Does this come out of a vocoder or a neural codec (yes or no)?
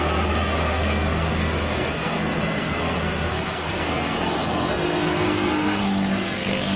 yes